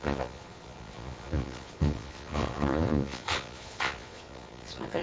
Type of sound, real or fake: fake